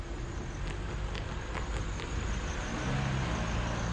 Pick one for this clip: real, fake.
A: real